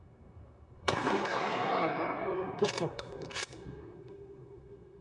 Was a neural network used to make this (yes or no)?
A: yes